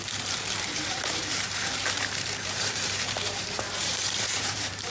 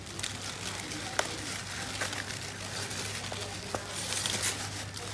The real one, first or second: second